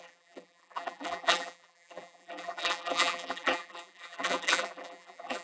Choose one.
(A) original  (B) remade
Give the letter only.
B